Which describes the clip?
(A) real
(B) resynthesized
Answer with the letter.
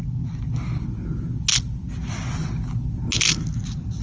A